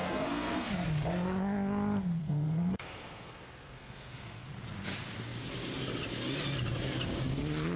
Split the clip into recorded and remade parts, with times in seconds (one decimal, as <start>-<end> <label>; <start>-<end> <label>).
0.0-0.7 remade; 0.7-2.2 recorded; 2.2-4.5 remade; 4.5-7.8 recorded